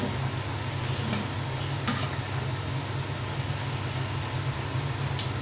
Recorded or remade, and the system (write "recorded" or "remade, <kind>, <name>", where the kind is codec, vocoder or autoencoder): recorded